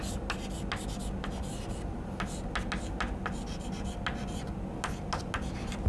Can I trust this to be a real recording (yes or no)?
yes